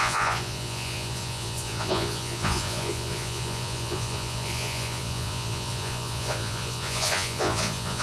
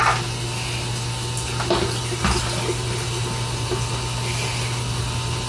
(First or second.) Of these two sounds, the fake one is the first